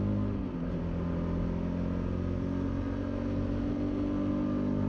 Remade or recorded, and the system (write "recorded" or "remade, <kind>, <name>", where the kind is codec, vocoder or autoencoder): recorded